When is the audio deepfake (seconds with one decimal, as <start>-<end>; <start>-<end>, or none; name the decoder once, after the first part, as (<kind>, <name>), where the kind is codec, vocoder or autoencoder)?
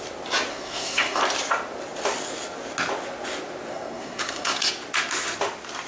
0.5-1.2 (codec, SNAC); 3.7-4.7